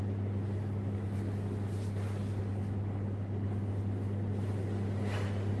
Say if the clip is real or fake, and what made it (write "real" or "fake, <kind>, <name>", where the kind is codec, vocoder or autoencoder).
real